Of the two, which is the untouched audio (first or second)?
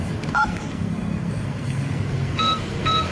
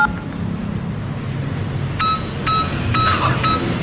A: second